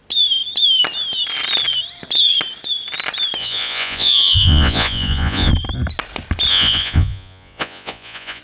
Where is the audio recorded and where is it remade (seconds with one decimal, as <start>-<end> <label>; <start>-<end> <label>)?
0.0-3.4 recorded; 3.4-5.5 remade; 5.5-6.5 recorded; 6.5-8.4 remade